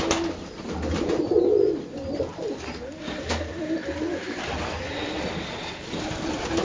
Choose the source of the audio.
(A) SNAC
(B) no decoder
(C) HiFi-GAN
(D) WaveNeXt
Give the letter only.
B